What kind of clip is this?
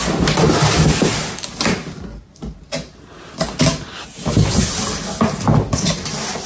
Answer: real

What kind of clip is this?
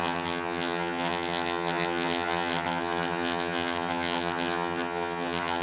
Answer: fake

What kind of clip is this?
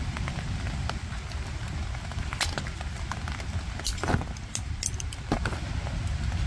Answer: real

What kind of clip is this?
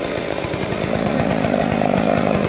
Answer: fake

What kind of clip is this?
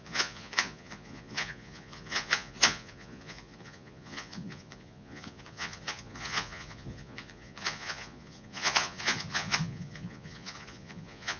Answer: fake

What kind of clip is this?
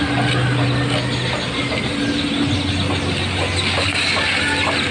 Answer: real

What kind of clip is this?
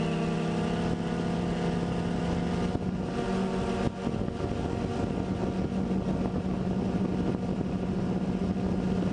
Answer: real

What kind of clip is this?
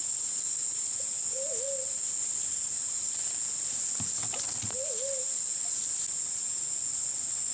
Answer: real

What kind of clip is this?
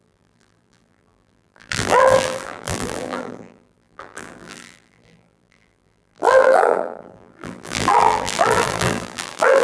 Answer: fake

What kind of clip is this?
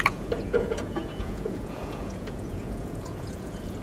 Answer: fake